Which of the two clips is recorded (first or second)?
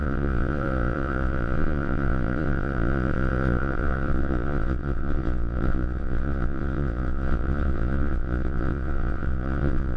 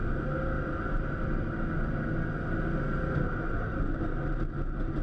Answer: second